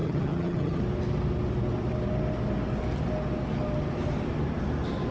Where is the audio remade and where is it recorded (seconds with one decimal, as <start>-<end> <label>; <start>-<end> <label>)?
0.0-0.8 remade; 0.8-5.1 recorded